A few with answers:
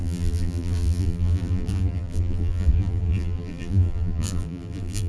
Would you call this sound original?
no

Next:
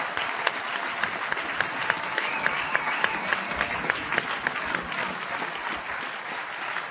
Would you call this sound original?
yes